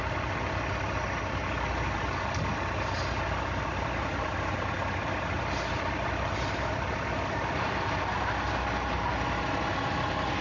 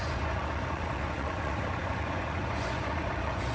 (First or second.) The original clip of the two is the first